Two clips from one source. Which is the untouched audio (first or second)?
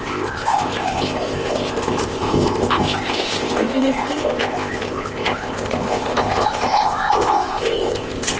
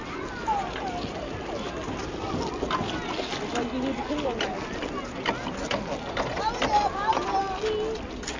second